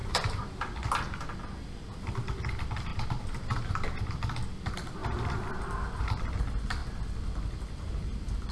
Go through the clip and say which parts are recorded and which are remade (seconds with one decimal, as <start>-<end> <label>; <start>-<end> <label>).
0.0-0.6 remade; 0.6-2.9 recorded; 2.9-3.7 remade; 3.7-8.5 recorded